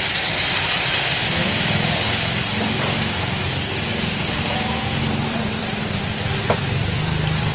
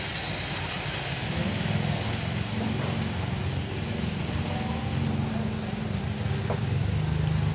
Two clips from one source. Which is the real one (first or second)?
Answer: second